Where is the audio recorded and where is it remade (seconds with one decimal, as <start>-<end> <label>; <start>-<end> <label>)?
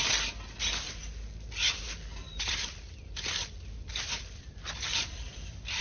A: 0.0-2.1 recorded; 2.1-5.8 remade